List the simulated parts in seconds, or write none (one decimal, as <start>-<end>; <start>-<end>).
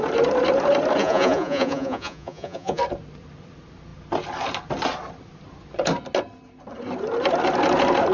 1.0-2.8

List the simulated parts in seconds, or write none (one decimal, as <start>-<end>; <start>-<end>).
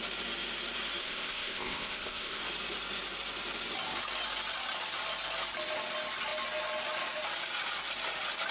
1.0-2.4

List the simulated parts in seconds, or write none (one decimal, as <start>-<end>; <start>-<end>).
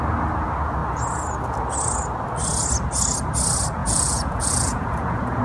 3.8-5.4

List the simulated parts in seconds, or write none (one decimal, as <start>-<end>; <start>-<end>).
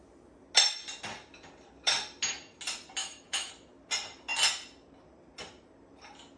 3.0-3.5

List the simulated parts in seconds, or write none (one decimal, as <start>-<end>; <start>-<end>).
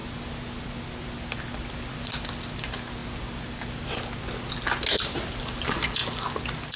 none